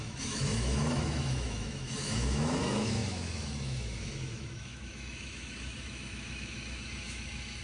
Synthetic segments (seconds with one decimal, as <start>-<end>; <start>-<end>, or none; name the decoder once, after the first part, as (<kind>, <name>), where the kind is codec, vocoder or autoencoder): 0.0-7.6 (autoencoder, DAC-VAE)